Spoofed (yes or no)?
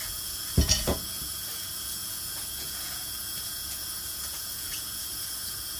yes